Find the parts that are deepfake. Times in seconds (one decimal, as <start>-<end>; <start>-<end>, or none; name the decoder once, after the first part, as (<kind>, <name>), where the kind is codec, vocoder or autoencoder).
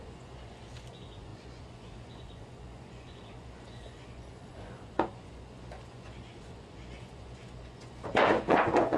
0.0-9.0 (vocoder, Vocos)